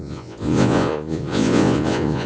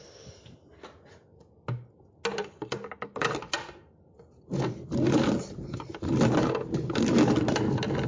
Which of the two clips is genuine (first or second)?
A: second